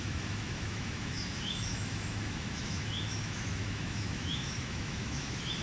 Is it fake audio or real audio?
fake